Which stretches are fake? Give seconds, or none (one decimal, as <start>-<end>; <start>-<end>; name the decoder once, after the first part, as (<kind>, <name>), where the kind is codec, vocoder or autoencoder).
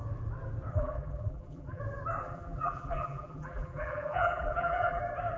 0.7-1.8 (vocoder, BigVGAN v2); 2.2-5.0